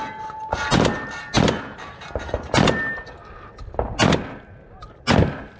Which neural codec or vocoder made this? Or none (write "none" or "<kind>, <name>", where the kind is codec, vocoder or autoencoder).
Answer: none